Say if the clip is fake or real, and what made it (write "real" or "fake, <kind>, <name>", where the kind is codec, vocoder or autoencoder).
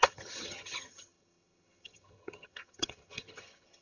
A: fake, vocoder, HiFi-GAN